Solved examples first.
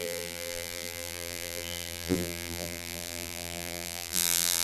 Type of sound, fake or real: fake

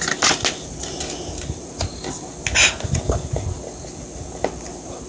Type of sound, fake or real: real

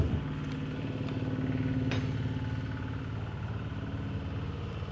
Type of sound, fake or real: real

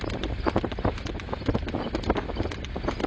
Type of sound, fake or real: real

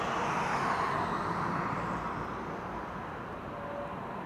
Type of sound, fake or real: real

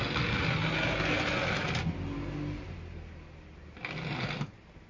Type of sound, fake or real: real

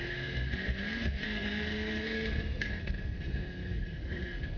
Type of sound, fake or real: fake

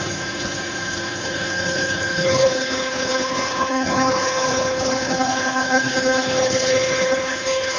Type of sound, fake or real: fake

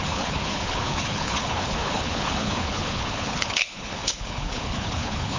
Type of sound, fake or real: fake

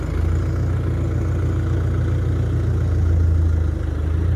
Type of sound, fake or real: real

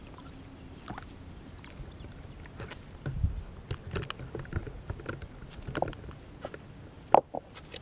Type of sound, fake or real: real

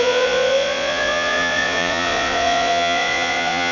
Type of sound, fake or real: fake